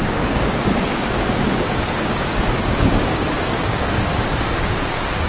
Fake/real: fake